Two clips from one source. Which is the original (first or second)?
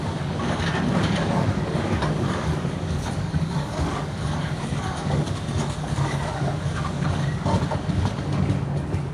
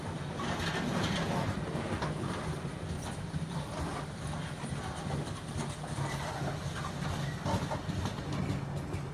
second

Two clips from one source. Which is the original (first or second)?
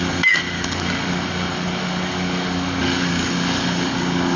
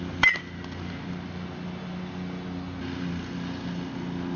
second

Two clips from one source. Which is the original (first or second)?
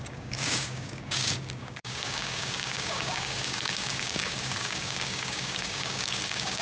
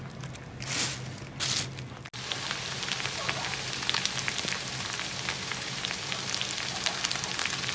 second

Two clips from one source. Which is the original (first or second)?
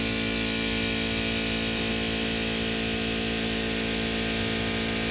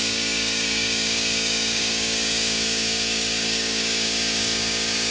first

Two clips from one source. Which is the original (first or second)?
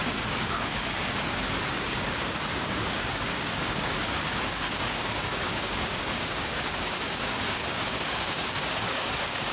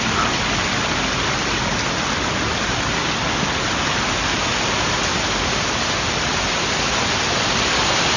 second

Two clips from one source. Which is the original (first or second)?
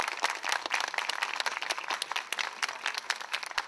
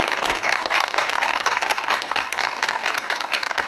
first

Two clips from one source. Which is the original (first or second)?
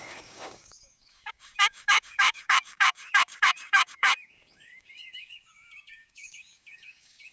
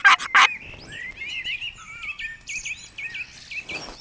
second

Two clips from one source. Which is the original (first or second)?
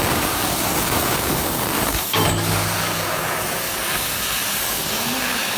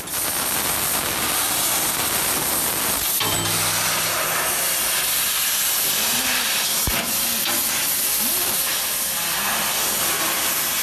second